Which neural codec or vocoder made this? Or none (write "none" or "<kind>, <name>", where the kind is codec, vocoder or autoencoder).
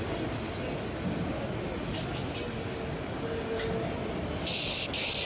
none